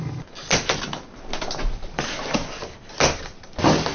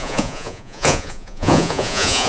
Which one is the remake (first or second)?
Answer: second